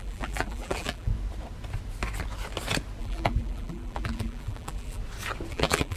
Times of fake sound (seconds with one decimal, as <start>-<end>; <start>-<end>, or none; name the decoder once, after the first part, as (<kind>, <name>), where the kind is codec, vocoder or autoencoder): 0.0-1.1 (vocoder, BigVGAN v2); 3.0-5.0; 5.5-6.0